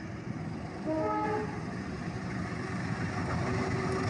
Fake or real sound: real